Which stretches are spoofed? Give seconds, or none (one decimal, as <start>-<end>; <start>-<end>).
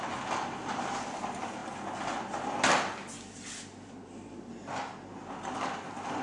none